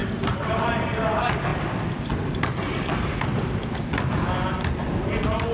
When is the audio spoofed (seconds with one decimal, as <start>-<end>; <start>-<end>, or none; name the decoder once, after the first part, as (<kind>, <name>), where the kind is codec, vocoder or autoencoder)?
none